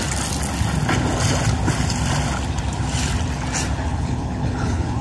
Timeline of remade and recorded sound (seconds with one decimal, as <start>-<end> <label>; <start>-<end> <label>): 0.0-3.9 recorded; 3.9-5.0 remade